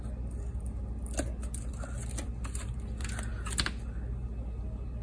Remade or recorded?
recorded